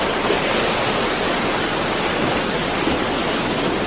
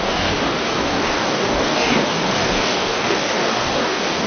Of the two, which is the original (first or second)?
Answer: first